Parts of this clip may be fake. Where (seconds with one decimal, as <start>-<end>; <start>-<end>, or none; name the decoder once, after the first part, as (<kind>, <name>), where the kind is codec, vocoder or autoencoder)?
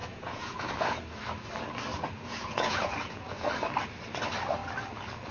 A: 0.0-1.0 (vocoder, Vocos); 1.9-3.5